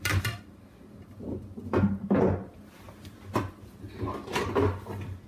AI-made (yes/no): no